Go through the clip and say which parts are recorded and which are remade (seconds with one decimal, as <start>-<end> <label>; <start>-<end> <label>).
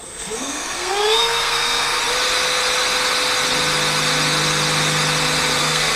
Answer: 0.0-2.0 remade; 2.0-5.6 recorded; 5.6-6.0 remade